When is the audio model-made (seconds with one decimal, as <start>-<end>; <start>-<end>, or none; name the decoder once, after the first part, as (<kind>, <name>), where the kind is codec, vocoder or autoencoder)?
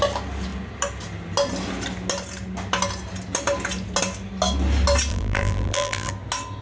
5.1-6.1 (vocoder, BigVGAN v2)